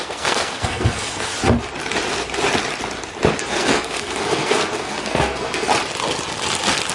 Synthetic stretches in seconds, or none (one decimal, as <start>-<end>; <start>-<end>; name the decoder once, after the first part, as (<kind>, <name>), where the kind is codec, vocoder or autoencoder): 0.0-1.3 (codec, SNAC); 3.4-5.7